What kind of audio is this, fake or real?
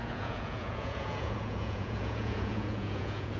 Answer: fake